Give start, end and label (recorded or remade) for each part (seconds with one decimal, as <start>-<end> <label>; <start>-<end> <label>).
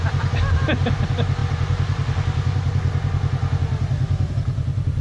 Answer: 0.0-5.0 recorded